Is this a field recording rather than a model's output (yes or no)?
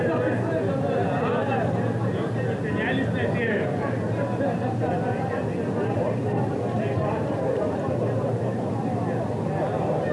yes